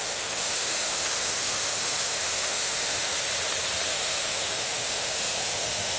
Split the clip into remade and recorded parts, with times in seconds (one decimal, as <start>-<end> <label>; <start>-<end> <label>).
0.0-3.1 remade; 3.1-3.9 recorded; 3.9-6.0 remade